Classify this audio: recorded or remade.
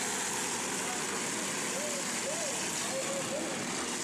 recorded